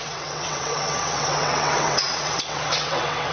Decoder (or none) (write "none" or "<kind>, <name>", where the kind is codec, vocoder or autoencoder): vocoder, WaveNeXt